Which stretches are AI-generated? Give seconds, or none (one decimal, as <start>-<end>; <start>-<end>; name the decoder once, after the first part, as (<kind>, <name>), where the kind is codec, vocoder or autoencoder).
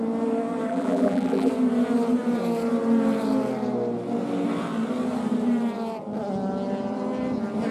0.7-1.5 (vocoder, BigVGAN v2)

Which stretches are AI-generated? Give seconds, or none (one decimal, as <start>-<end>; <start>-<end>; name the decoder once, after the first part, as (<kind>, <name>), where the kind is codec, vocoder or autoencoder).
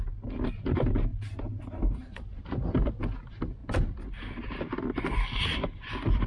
none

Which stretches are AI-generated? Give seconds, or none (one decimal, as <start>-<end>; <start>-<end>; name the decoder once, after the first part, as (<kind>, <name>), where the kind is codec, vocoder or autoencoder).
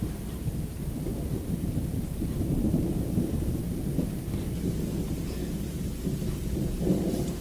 0.0-1.1 (vocoder, BigVGAN v2); 2.6-3.6; 7.0-7.4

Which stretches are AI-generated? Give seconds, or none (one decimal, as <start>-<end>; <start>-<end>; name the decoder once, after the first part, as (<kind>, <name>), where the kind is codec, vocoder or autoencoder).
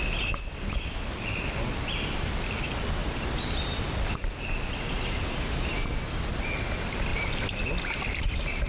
3.0-3.6 (vocoder, BigVGAN v2); 7.1-7.6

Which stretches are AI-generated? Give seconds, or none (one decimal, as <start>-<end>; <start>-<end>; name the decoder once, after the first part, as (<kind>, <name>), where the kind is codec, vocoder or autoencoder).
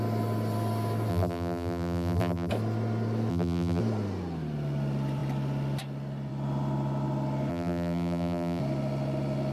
1.1-2.5 (vocoder, BigVGAN v2); 3.3-3.8; 7.5-8.6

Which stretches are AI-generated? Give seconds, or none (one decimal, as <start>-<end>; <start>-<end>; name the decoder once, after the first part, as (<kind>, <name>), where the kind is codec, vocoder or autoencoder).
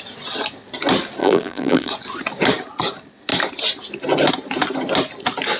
1.2-1.9 (vocoder, BigVGAN v2)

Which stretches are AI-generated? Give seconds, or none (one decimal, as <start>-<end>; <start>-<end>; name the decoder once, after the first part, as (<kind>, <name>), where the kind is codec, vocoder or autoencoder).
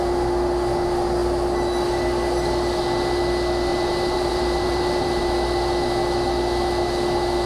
3.7-5.2 (vocoder, BigVGAN v2)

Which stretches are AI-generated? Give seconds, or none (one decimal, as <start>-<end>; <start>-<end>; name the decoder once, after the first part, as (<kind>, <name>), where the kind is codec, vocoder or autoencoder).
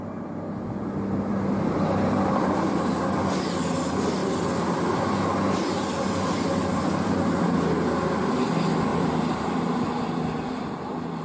1.3-2.5 (vocoder, BigVGAN v2); 8.9-11.2